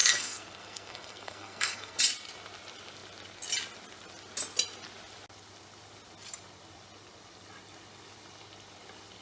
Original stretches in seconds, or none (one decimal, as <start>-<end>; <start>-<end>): 2.0-9.2